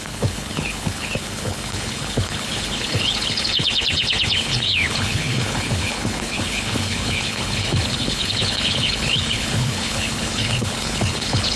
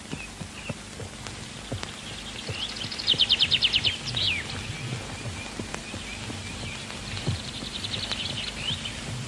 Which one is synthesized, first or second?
first